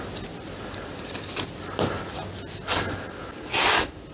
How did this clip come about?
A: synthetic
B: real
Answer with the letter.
B